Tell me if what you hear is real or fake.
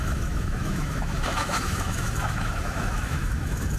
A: fake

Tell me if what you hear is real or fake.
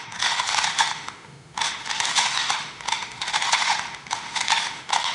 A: fake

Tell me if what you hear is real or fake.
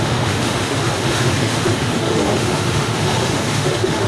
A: fake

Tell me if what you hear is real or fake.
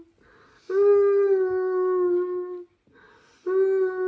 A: real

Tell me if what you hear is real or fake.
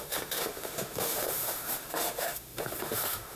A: fake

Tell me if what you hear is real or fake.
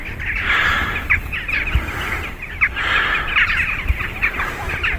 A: real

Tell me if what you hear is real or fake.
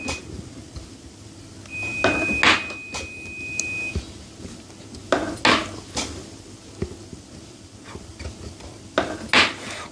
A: real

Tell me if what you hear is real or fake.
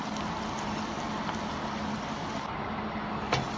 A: real